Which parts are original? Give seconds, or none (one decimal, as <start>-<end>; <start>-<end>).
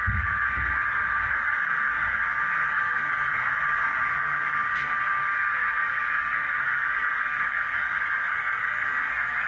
none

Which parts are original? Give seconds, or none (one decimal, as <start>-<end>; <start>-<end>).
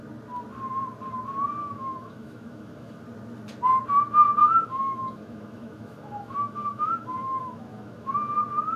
0.0-1.6; 3.0-4.4; 8.1-8.8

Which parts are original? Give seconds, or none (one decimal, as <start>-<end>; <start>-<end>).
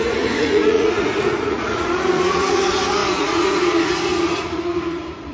none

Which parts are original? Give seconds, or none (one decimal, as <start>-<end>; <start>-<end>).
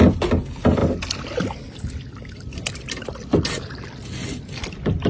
0.0-5.1